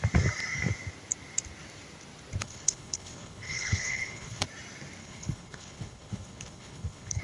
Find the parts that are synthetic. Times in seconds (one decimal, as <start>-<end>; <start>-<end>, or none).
2.4-4.4; 5.0-7.2